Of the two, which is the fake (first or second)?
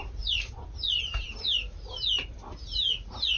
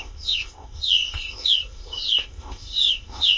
second